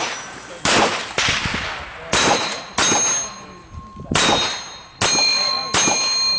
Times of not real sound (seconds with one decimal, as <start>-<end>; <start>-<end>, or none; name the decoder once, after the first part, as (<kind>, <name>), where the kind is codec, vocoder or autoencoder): 2.2-2.7 (vocoder, Vocos)

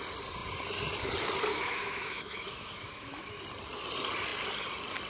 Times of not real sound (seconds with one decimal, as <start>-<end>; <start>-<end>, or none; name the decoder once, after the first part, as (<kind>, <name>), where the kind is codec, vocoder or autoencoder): 1.5-3.4 (autoencoder, DAC-VAE)

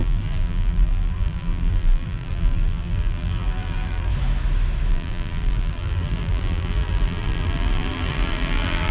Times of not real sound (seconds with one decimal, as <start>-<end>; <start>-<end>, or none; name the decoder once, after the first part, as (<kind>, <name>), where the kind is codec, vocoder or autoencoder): 0.0-4.1 (vocoder, BigVGAN v2); 4.9-8.9